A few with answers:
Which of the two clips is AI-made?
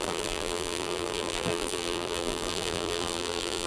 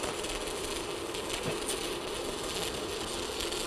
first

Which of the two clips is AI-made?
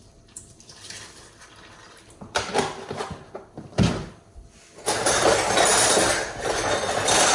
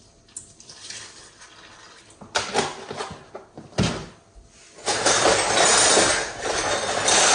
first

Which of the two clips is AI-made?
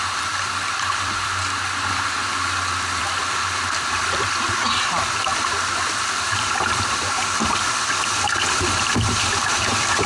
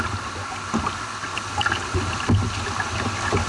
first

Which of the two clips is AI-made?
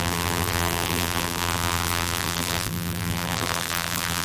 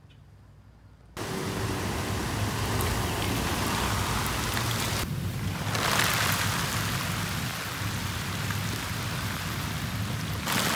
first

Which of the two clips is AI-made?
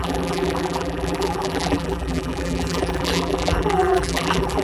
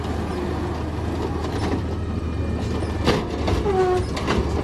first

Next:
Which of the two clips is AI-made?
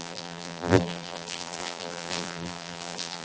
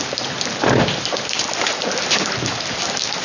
first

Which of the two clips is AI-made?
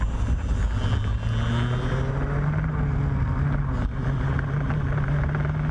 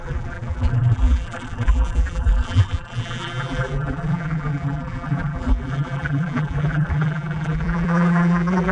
second